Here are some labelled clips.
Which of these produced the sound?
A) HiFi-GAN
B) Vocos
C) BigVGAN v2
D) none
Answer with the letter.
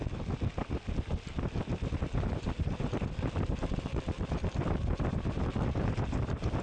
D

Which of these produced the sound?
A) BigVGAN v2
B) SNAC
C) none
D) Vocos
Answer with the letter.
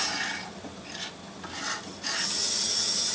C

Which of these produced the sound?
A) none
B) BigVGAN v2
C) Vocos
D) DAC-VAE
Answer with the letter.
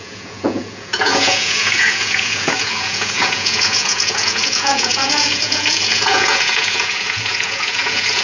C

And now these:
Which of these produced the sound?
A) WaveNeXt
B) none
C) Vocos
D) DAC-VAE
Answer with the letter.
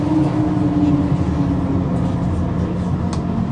B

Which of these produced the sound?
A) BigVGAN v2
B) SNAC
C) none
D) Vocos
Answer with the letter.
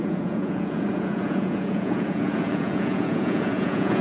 D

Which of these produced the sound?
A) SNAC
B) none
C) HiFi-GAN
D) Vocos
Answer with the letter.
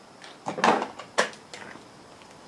B